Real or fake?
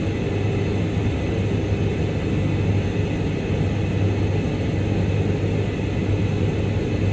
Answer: real